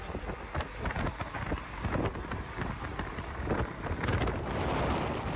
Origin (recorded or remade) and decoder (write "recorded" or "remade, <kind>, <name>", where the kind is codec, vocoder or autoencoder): recorded